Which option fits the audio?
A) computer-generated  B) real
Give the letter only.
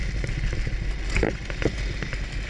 B